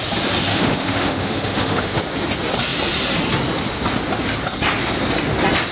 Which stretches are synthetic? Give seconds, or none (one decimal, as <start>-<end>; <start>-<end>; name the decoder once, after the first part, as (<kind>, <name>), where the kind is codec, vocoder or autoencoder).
0.5-2.0 (autoencoder, DAC-VAE)